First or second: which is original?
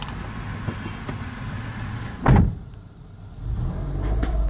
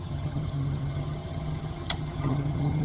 first